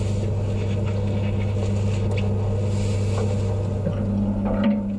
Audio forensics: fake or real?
real